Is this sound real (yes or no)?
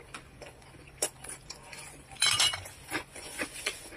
no